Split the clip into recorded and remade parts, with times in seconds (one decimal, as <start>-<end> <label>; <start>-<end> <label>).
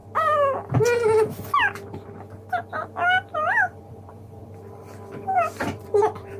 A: 0.0-3.3 recorded; 3.3-6.4 remade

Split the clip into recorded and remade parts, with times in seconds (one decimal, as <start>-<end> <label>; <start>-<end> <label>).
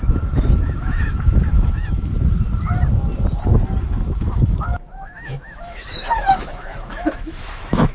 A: 0.0-2.1 remade; 2.1-3.8 recorded; 3.8-7.9 remade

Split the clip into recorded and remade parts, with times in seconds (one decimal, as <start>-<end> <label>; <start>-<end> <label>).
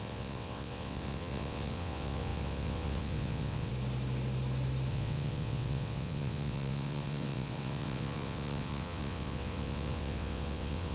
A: 0.0-3.7 remade; 3.7-4.9 recorded; 4.9-10.9 remade